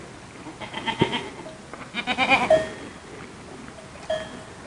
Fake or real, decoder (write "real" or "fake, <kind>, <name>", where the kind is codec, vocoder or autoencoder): real